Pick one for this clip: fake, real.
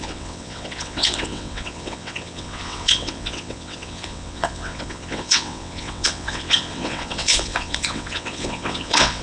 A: fake